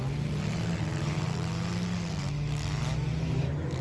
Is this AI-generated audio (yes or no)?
no